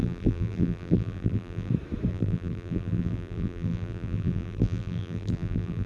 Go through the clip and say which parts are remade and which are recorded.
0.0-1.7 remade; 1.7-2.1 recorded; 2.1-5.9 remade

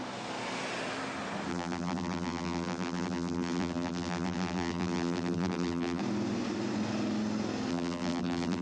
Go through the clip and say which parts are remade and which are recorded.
0.0-1.5 recorded; 1.5-6.0 remade; 6.0-7.7 recorded; 7.7-8.6 remade

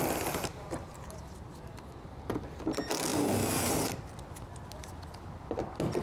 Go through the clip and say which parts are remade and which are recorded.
0.0-0.5 recorded; 0.5-1.2 remade; 1.2-6.0 recorded

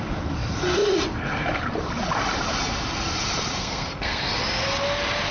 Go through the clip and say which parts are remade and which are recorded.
0.0-3.6 recorded; 3.6-4.2 remade; 4.2-5.3 recorded

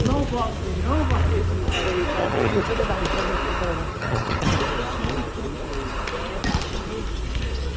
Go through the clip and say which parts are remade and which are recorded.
0.0-2.2 recorded; 2.2-2.7 remade; 2.7-3.9 recorded; 3.9-4.6 remade; 4.6-7.8 recorded

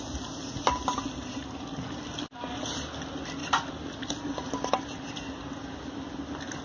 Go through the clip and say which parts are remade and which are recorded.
0.0-6.6 recorded

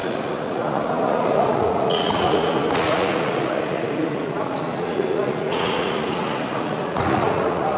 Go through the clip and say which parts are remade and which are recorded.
0.0-7.8 remade